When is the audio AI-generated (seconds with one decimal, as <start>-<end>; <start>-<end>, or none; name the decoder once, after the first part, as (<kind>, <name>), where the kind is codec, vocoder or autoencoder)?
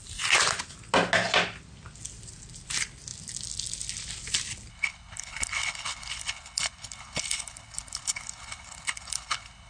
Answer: 4.7-9.7 (codec, HILCodec)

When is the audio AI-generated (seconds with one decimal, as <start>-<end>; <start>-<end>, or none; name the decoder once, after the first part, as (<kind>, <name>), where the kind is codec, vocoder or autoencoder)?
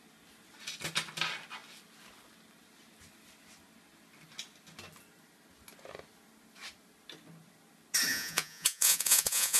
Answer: 8.1-9.6 (vocoder, Vocos)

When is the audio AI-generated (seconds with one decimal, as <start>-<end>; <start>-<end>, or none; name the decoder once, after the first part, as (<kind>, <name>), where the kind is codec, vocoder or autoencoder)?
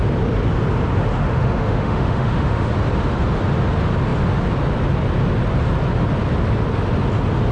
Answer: 1.3-2.7 (autoencoder, DAC-VAE)